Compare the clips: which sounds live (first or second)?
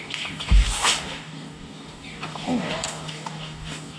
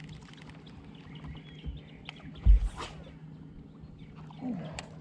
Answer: second